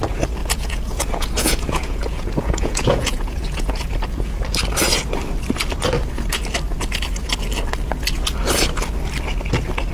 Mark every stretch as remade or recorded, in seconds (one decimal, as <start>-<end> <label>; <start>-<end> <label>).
0.0-0.4 recorded; 0.4-3.9 remade; 3.9-9.9 recorded